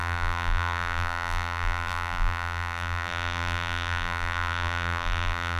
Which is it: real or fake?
fake